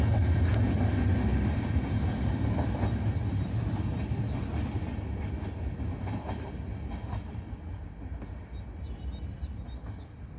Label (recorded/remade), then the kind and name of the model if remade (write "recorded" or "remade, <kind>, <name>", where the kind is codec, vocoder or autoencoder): recorded